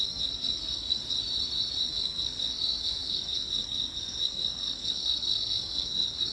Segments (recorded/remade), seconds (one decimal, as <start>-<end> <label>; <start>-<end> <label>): 0.0-1.0 remade; 1.0-1.9 recorded; 1.9-6.3 remade